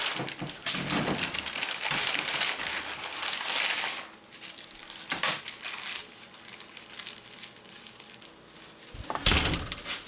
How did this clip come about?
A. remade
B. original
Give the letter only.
B